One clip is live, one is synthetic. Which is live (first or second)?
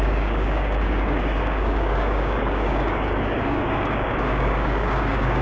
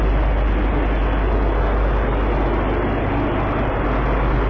second